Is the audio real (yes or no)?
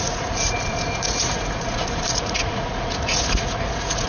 no